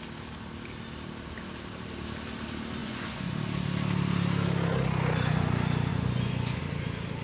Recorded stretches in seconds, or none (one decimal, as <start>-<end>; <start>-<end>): 0.0-2.8; 3.3-5.9; 6.6-7.2